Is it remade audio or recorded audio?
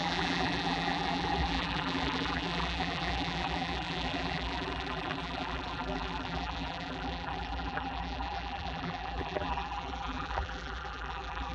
remade